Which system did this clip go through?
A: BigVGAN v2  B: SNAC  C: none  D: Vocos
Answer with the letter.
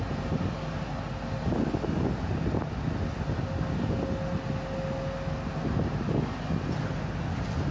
C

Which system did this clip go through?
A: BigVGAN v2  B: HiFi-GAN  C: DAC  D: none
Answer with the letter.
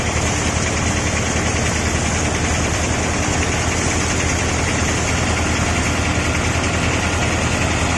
D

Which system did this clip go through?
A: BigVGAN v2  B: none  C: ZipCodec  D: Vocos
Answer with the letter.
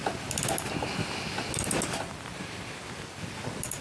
B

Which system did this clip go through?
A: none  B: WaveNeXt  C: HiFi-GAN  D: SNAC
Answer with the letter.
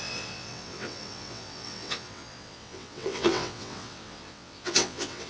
B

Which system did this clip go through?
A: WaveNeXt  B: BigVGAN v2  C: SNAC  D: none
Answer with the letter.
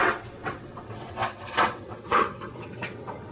A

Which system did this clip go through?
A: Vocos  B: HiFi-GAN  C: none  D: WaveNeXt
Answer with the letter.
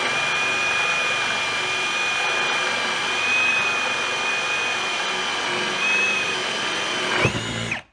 C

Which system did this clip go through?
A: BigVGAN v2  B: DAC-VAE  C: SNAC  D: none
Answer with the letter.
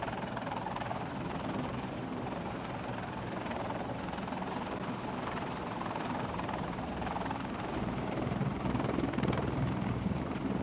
A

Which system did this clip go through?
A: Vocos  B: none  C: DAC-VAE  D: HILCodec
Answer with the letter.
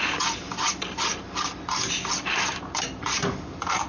B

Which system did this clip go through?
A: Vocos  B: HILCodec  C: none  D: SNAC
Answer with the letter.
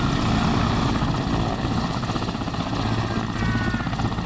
C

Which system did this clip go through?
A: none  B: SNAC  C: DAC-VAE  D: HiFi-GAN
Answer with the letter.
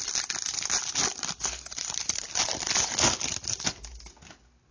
A